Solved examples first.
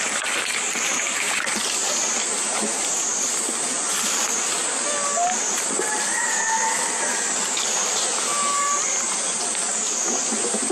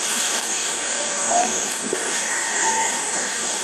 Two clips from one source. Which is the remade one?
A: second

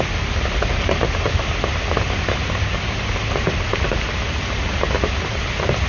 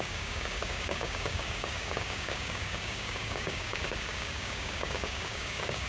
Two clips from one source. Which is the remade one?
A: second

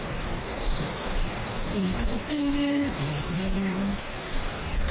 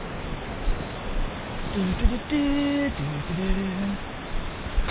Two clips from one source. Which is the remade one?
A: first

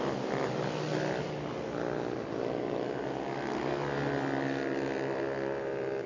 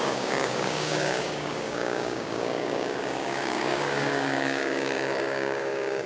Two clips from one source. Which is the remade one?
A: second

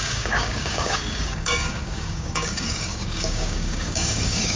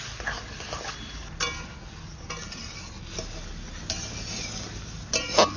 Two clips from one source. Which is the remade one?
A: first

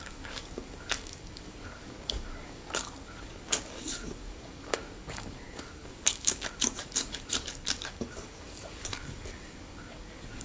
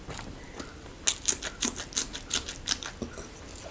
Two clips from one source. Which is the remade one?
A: first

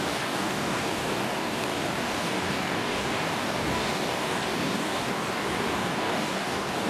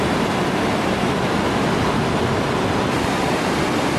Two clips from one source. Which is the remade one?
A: first